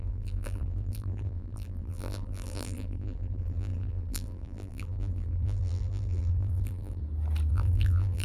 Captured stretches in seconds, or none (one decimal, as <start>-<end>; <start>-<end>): 7.0-7.5